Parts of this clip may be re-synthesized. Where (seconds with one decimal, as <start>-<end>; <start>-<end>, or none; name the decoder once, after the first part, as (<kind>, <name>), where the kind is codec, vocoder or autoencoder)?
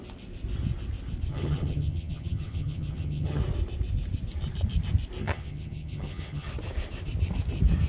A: 1.3-3.4 (vocoder, HiFi-GAN); 5.2-6.5